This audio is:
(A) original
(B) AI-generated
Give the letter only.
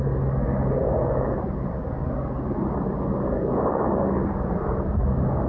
A